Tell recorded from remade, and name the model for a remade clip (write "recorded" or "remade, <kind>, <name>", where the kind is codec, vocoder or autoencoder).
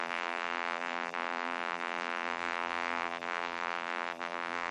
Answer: remade, vocoder, BigVGAN v2